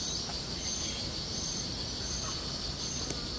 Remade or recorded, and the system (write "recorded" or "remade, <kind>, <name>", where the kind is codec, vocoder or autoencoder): recorded